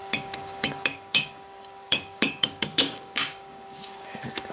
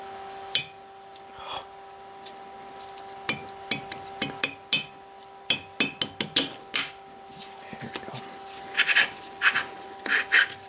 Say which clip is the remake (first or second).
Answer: first